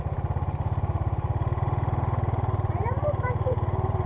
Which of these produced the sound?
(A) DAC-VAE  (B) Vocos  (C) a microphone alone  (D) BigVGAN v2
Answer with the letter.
D